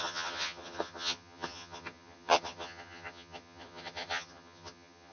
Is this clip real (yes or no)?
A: no